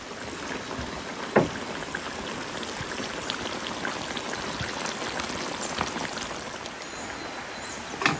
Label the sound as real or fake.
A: real